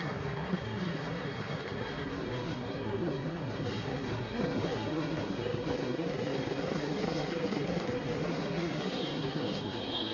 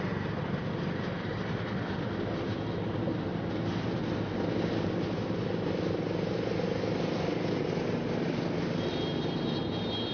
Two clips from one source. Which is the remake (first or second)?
first